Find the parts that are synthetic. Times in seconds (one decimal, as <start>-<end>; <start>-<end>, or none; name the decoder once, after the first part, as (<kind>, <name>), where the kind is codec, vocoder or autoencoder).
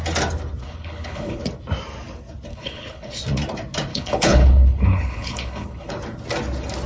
0.6-1.4 (codec, HILCodec); 2.5-3.2; 3.9-5.9